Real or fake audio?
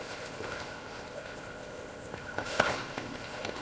fake